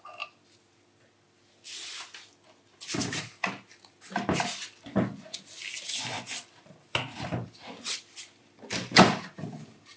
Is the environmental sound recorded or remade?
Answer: recorded